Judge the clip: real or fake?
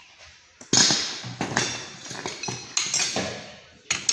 real